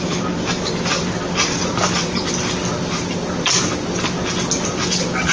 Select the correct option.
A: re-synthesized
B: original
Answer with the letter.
B